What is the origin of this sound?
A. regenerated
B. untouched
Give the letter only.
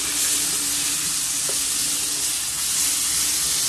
B